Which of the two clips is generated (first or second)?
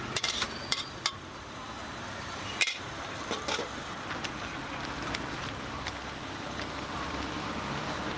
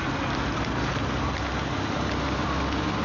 first